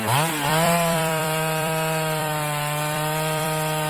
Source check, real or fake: fake